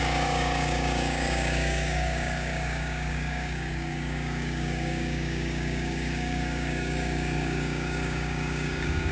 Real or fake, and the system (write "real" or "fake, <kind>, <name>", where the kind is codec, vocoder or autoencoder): fake, codec, DAC